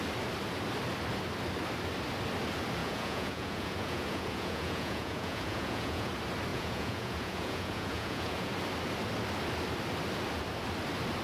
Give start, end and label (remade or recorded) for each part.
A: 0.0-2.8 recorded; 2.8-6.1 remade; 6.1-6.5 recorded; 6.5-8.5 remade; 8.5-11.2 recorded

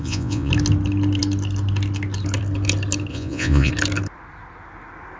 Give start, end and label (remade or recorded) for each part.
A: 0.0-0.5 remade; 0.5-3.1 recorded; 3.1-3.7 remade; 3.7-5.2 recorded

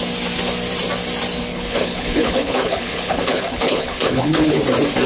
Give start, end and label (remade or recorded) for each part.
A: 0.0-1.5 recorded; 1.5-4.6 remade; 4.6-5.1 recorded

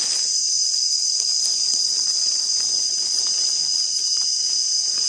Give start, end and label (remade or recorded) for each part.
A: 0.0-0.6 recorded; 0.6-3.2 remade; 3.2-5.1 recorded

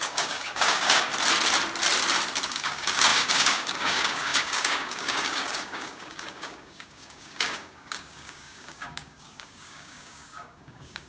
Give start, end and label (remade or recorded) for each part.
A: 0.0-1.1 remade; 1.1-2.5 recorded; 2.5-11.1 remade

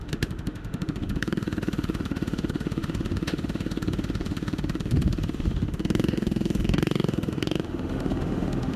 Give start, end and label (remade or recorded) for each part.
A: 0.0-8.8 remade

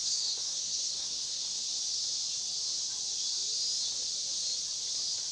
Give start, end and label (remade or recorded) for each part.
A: 0.0-1.6 remade; 1.6-5.3 recorded

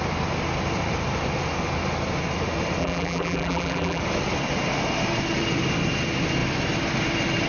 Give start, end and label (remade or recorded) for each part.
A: 0.0-2.8 recorded; 2.8-4.0 remade; 4.0-7.5 recorded